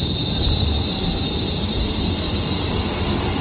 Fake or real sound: fake